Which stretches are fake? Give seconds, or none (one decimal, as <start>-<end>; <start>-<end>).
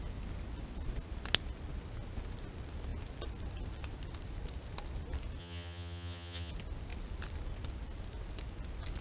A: 5.4-6.5